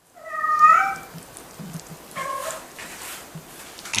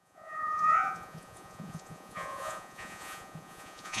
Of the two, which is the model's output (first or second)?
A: second